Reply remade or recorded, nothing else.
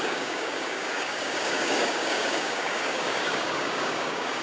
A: remade